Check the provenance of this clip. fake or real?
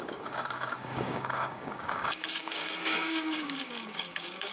fake